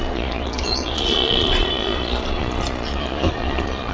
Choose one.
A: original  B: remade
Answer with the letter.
B